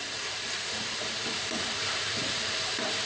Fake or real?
fake